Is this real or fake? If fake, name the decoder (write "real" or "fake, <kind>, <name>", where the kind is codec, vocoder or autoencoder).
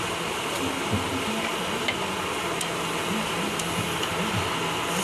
real